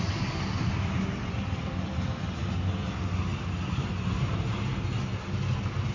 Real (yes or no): yes